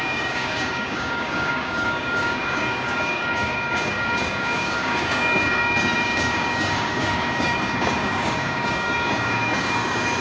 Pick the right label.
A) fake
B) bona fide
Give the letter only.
A